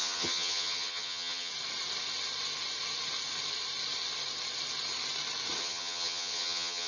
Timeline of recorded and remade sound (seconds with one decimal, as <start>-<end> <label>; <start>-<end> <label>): 0.0-1.5 remade; 1.5-5.6 recorded; 5.6-6.9 remade